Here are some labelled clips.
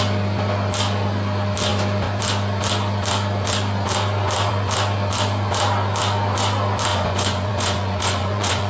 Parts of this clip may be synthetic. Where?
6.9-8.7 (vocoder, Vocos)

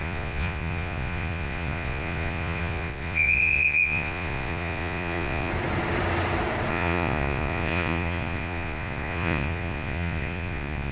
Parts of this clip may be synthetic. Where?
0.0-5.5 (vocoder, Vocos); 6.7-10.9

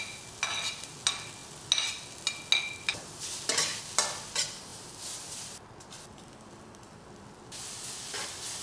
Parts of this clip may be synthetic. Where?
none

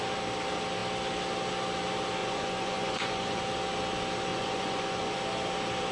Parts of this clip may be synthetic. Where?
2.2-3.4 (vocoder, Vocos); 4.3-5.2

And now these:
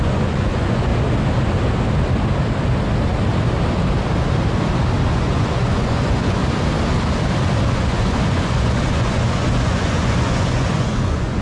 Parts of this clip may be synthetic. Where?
0.0-0.9 (vocoder, Vocos); 5.1-6.4; 7.7-11.4

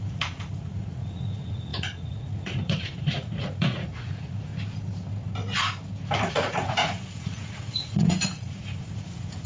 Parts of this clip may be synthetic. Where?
0.0-4.5 (vocoder, Vocos); 6.3-9.5